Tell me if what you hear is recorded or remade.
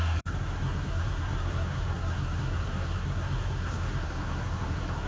remade